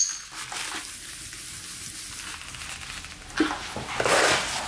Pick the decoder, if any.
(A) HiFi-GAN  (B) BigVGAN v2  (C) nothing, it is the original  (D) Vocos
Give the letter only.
C